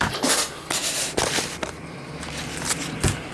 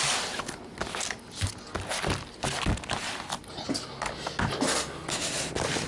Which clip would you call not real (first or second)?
first